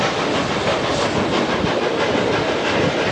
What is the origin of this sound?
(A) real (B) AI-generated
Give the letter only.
A